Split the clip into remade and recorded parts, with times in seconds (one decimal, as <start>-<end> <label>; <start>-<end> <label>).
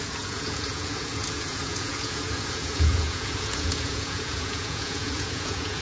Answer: 0.0-5.8 remade